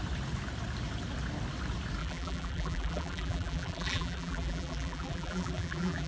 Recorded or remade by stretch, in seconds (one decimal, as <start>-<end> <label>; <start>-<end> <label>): 0.0-2.0 recorded; 2.0-6.1 remade